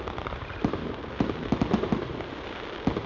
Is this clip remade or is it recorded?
recorded